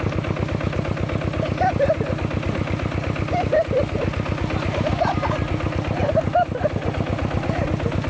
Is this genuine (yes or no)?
yes